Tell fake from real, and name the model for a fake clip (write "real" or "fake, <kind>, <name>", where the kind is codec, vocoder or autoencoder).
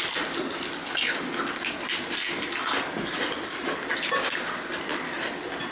real